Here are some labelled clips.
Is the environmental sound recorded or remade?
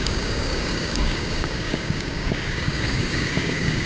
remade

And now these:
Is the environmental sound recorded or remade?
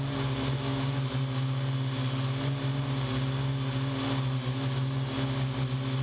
recorded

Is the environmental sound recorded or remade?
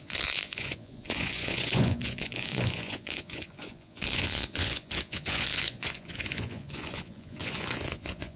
remade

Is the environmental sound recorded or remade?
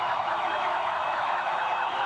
remade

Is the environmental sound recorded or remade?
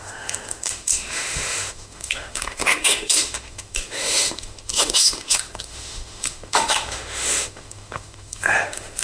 remade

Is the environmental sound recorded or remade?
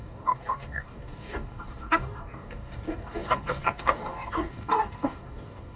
remade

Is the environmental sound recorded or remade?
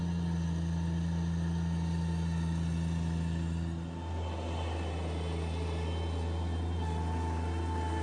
recorded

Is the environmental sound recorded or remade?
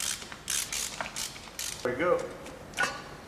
recorded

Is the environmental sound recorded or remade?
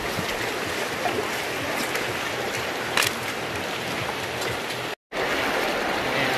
recorded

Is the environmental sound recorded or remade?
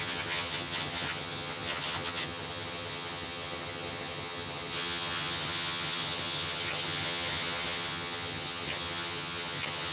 remade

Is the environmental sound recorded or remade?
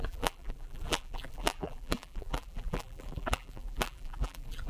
remade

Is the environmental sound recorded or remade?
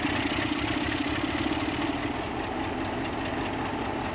recorded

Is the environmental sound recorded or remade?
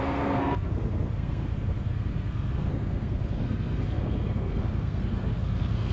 remade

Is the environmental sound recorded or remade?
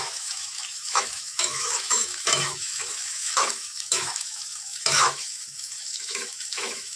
remade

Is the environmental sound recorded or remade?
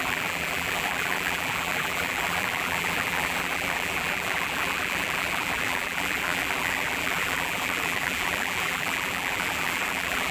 remade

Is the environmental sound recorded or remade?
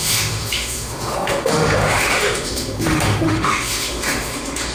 remade